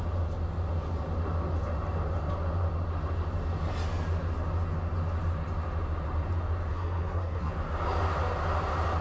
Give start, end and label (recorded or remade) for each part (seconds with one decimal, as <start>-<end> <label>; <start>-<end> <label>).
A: 0.0-6.7 recorded; 6.7-7.5 remade; 7.5-9.0 recorded